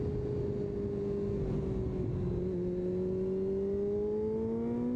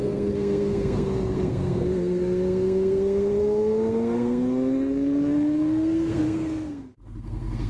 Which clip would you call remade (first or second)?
second